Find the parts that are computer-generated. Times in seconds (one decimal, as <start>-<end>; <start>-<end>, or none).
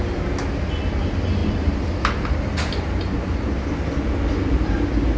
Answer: none